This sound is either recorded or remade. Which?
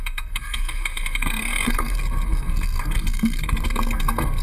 remade